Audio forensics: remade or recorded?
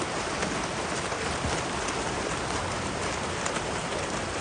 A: recorded